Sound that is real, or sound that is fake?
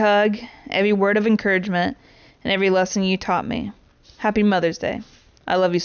real